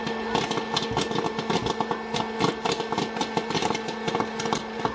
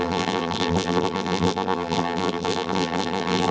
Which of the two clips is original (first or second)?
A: first